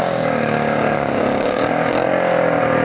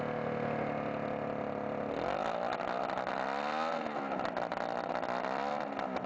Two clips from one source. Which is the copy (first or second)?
first